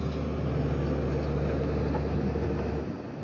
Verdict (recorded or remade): recorded